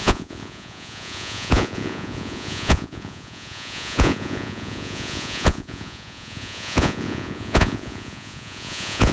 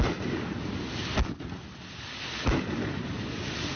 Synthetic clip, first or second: first